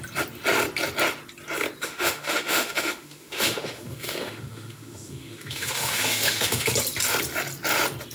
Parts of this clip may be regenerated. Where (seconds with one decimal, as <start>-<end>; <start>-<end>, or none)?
1.8-6.7